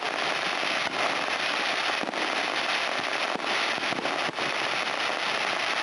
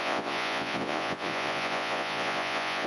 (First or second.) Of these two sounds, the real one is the first